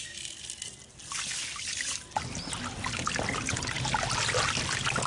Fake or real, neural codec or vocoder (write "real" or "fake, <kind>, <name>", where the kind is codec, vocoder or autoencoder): real